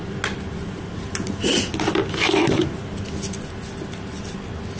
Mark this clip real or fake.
real